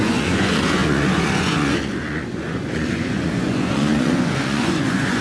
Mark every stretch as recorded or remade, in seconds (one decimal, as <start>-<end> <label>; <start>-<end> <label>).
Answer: 0.0-5.2 remade